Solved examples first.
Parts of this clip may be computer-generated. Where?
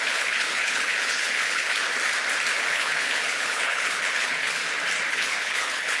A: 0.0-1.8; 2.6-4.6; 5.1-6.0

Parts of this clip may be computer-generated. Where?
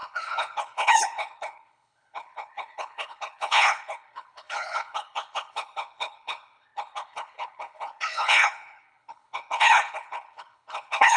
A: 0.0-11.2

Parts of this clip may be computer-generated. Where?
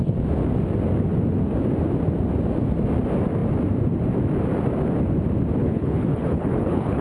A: 5.6-7.0